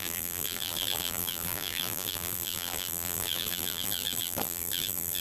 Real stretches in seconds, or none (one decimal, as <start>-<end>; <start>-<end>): none